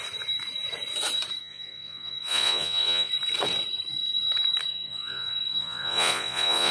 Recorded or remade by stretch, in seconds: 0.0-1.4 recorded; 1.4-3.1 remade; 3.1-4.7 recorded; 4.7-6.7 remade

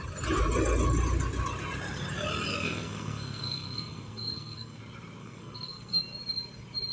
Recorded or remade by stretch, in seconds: 0.0-2.5 recorded; 2.5-4.8 remade; 4.8-5.2 recorded; 5.2-6.0 remade; 6.0-6.9 recorded

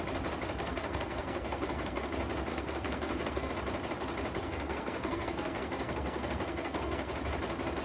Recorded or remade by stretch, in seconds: 0.0-0.6 recorded; 0.6-2.1 remade; 2.1-2.5 recorded; 2.5-3.5 remade; 3.5-4.4 recorded; 4.4-7.1 remade; 7.1-7.8 recorded

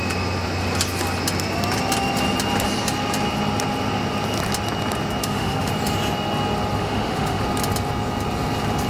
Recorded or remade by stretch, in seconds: 0.0-5.2 recorded; 5.2-5.7 remade; 5.7-6.8 recorded; 6.8-7.4 remade; 7.4-8.9 recorded

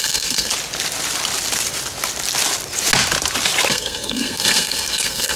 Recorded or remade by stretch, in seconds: 0.0-0.5 remade; 0.5-3.7 recorded; 3.7-5.4 remade

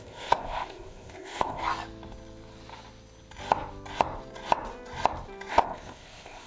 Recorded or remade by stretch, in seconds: 0.0-1.6 remade; 1.6-5.5 recorded; 5.5-6.5 remade